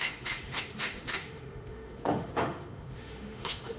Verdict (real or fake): fake